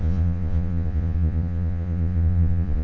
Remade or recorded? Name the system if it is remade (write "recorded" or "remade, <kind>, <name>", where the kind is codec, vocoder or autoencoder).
remade, vocoder, Vocos